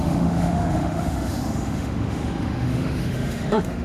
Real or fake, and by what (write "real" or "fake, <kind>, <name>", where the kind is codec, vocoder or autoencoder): fake, autoencoder, DAC-VAE